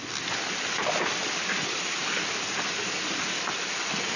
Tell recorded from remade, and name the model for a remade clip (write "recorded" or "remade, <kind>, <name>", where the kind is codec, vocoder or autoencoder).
recorded